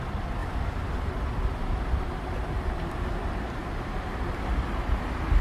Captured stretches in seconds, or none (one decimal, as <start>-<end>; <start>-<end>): 0.0-5.4